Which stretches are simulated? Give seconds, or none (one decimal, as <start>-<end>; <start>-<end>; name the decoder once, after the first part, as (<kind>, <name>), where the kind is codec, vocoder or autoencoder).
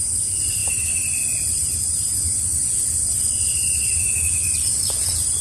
none